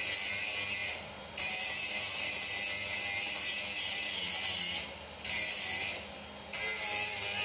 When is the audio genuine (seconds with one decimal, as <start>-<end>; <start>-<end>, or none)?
0.0-0.8; 2.0-7.4